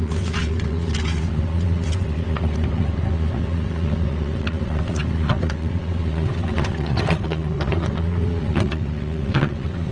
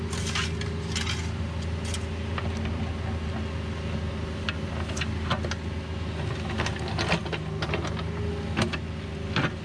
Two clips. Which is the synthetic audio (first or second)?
first